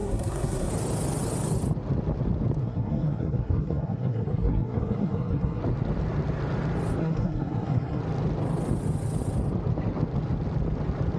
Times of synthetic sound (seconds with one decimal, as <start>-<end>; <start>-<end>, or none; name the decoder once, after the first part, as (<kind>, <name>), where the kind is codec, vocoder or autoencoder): 0.0-0.7 (codec, SNAC); 2.6-5.6; 7.0-8.0